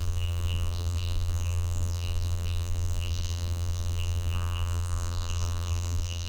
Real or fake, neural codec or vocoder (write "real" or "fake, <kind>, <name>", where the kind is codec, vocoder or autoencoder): fake, vocoder, BigVGAN v2